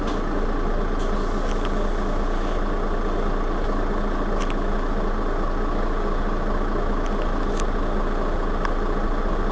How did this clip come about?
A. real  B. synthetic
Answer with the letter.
A